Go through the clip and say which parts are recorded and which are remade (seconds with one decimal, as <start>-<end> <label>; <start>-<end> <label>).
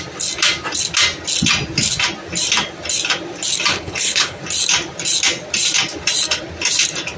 0.0-3.7 recorded; 3.7-4.4 remade; 4.4-7.2 recorded